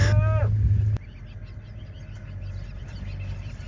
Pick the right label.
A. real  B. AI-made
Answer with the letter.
A